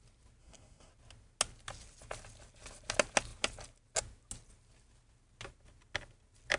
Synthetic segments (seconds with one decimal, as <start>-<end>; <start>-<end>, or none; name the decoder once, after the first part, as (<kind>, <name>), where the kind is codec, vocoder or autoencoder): 0.4-0.9 (codec, SNAC)